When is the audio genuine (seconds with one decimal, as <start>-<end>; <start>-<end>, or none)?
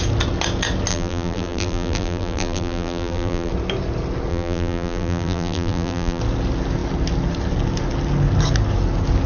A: 0.0-0.9; 3.5-4.3; 6.2-9.3